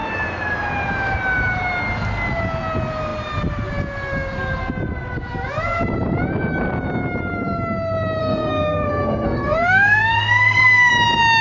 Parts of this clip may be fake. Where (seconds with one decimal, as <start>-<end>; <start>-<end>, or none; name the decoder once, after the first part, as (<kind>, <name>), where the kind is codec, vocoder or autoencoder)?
8.2-10.9 (codec, SNAC)